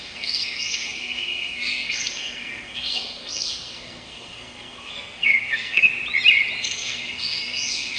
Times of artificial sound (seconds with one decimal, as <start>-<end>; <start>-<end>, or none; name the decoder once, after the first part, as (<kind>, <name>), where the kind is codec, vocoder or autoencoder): 0.0-5.9 (codec, SNAC); 6.6-8.0